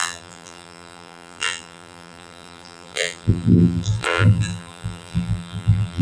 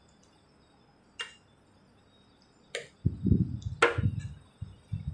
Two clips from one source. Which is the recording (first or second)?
second